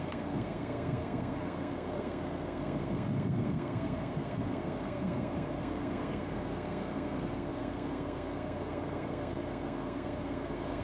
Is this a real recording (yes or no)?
no